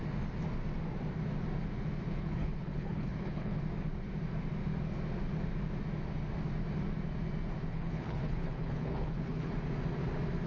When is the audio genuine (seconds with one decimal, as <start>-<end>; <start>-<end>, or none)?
0.0-2.1; 3.6-7.7; 9.5-10.5

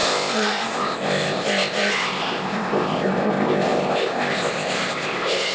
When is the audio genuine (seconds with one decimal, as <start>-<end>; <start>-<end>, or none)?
none

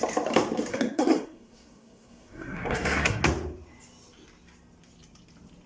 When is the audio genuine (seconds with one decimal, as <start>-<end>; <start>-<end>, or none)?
0.0-0.7; 3.2-5.7

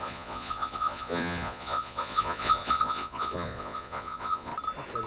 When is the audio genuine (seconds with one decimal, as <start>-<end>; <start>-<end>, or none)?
4.5-5.1